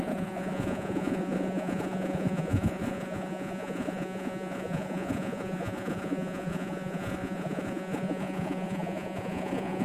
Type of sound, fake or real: fake